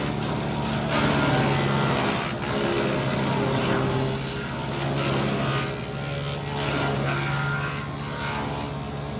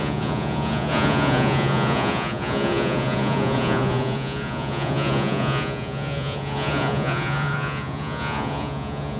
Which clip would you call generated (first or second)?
second